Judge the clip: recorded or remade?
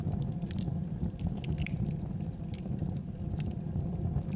remade